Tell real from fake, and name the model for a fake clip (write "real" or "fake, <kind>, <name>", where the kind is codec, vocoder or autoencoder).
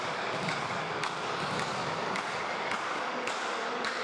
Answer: fake, codec, DAC